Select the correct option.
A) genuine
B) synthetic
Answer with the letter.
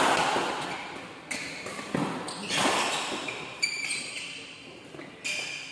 A